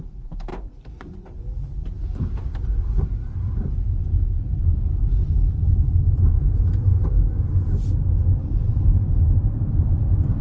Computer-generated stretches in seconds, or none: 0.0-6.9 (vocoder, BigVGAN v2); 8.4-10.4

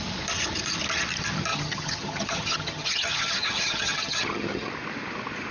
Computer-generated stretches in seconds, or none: 1.5-4.7 (vocoder, HiFi-GAN)

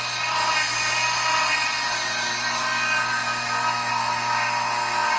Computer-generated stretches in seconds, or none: none

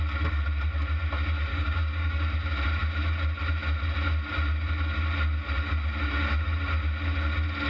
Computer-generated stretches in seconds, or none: 1.5-2.2 (codec, DAC)

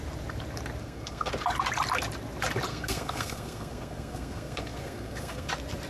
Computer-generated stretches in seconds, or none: 0.8-1.3 (codec, SNAC); 2.7-5.5

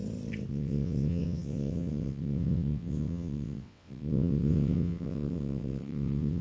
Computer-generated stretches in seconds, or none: 0.5-6.4 (vocoder, WaveNeXt)

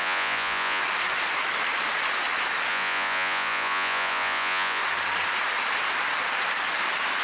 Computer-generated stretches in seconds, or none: 0.0-0.8 (vocoder, Vocos); 2.7-4.8

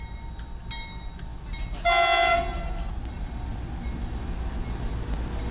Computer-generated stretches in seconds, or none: none